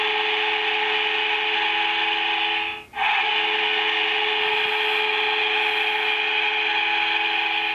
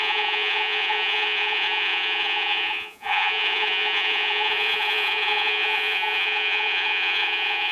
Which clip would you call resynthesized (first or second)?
second